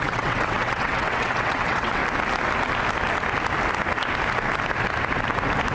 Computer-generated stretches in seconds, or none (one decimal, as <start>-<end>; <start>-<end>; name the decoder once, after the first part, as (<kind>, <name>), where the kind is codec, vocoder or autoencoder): 0.0-2.0 (vocoder, WaveNeXt)